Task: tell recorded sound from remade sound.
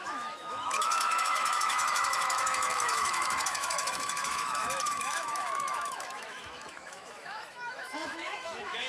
remade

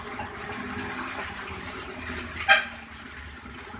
remade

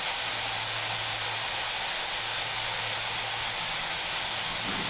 recorded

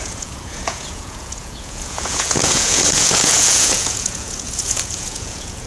remade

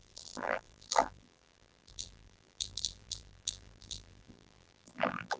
remade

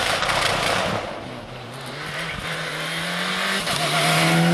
recorded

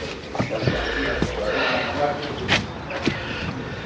remade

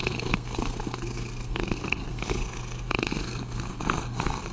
remade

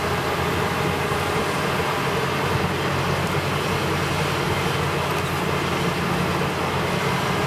recorded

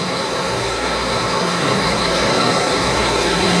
remade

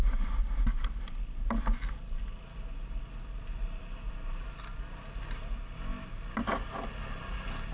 recorded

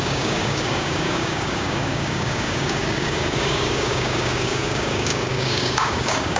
remade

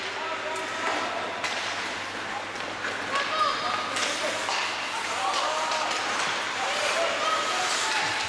recorded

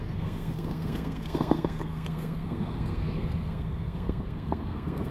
remade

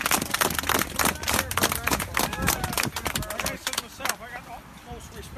recorded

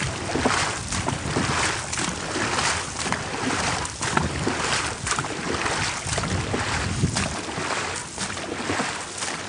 recorded